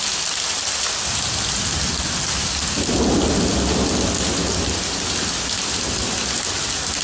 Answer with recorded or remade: recorded